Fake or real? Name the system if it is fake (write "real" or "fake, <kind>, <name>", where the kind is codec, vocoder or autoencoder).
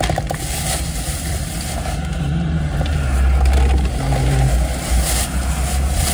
real